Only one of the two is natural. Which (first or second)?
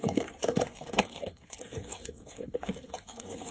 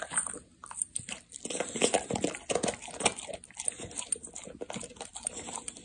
second